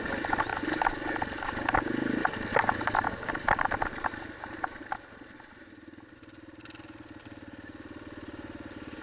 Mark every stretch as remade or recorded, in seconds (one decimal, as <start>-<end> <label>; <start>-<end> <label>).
0.0-9.0 recorded

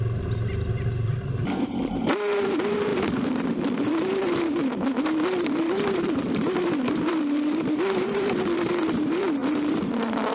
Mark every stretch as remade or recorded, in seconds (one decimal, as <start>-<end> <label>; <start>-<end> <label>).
0.0-10.3 remade

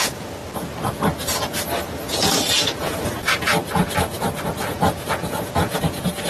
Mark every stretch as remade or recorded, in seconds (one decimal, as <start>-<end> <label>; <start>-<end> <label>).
0.0-0.4 remade; 0.4-1.9 recorded; 1.9-3.5 remade; 3.5-4.6 recorded; 4.6-6.3 remade

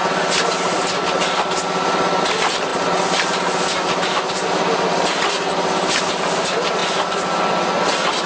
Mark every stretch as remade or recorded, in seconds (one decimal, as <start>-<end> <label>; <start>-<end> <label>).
0.0-8.3 recorded